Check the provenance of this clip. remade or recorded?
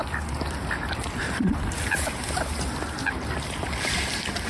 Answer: recorded